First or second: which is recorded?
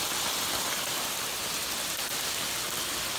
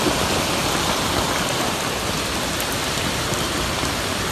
first